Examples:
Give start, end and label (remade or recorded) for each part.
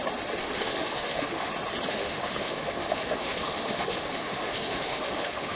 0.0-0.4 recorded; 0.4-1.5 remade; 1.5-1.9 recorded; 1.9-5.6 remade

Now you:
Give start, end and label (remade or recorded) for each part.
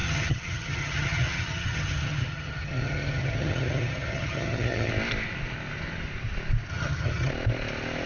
0.0-4.9 remade; 4.9-6.7 recorded; 6.7-7.3 remade; 7.3-8.1 recorded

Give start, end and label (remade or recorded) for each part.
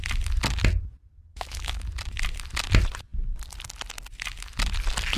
0.0-1.3 recorded; 1.3-1.8 remade; 1.8-5.2 recorded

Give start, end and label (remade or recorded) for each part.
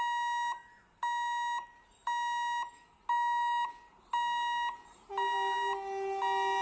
0.0-6.6 recorded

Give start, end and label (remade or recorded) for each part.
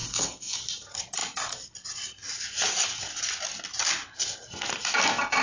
0.0-0.6 remade; 0.6-5.4 recorded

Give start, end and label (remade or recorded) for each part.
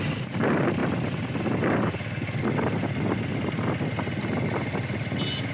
0.0-5.5 recorded